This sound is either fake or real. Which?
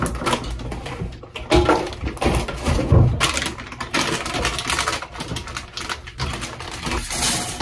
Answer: real